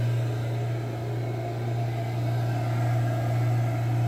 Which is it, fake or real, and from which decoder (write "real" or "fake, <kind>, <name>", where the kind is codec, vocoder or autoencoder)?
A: real